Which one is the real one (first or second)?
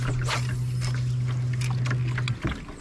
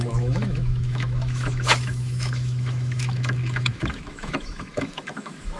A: first